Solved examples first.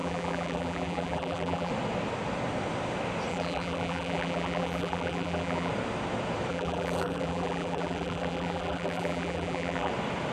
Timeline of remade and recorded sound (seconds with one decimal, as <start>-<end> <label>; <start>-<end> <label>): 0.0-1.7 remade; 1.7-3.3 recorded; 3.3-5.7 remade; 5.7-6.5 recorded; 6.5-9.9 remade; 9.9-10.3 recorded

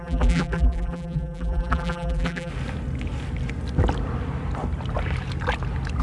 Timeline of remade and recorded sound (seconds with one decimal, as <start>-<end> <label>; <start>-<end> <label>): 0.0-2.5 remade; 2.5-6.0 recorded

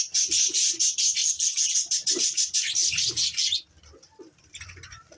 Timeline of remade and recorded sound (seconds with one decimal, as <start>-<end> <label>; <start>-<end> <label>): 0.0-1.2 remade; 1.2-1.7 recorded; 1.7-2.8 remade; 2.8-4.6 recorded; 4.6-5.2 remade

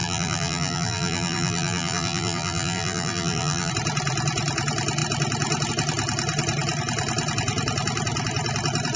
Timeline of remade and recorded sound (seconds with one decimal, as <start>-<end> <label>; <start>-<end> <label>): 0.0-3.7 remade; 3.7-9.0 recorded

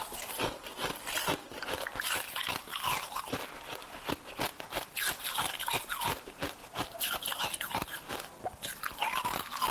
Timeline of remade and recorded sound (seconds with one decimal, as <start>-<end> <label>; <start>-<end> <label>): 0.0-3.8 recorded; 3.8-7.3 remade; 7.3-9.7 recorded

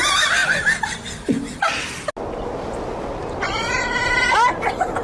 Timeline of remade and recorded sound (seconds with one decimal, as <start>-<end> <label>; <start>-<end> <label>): 0.0-0.4 remade; 0.4-3.4 recorded; 3.4-4.0 remade; 4.0-4.5 recorded; 4.5-5.0 remade

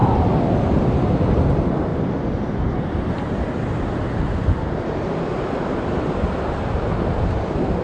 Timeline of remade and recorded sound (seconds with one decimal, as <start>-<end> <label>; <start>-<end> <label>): 0.0-1.5 remade; 1.5-1.9 recorded; 1.9-6.6 remade; 6.6-7.8 recorded